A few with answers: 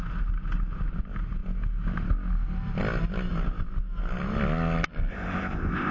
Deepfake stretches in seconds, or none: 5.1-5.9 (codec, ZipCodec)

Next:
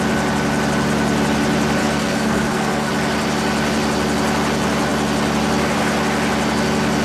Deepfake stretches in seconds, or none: 1.8-2.9 (codec, SNAC)

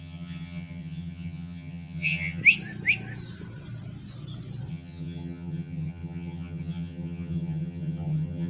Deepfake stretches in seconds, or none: 0.0-2.4 (vocoder, HiFi-GAN); 4.7-8.5

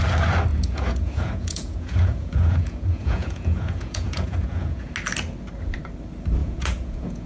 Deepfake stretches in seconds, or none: 0.5-4.9 (vocoder, Vocos); 6.4-7.3

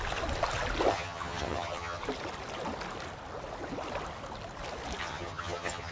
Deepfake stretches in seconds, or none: 0.9-2.0 (vocoder, HiFi-GAN); 5.0-5.9

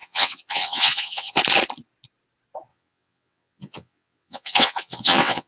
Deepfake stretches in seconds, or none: 0.0-1.4 (vocoder, WaveNeXt); 2.7-5.5